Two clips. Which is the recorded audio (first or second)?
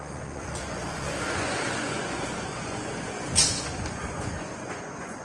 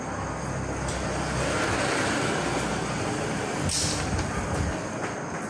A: second